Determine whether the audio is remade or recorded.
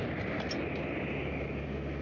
recorded